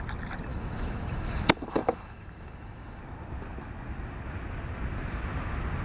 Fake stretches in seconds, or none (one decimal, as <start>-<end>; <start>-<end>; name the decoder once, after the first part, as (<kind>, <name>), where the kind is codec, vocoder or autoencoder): 0.5-3.0 (autoencoder, DAC-VAE)